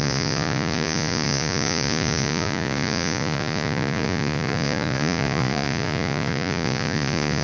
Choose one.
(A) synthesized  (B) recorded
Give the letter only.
A